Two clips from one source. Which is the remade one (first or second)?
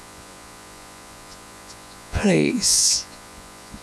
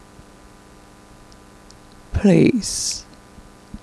first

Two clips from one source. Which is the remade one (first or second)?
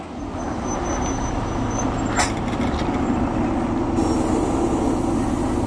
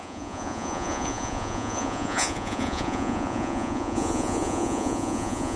second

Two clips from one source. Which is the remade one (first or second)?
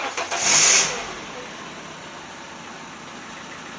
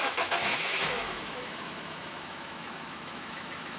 second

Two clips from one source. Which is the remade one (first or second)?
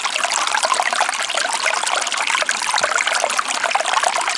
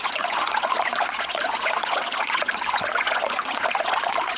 second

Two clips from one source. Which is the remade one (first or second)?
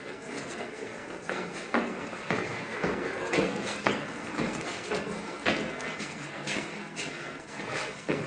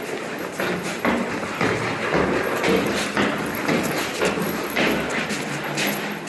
first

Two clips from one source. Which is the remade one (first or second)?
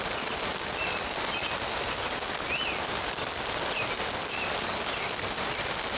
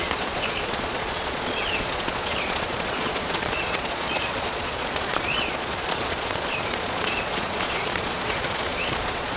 second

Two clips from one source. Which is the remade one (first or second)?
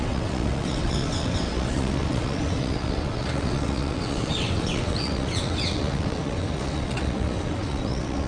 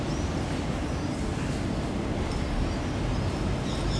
first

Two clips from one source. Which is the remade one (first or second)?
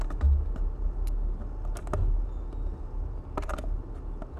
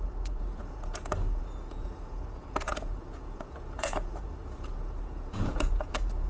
second